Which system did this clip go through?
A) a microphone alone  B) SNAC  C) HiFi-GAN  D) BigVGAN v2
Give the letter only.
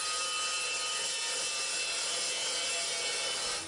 A